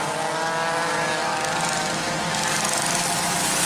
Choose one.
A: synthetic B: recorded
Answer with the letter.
B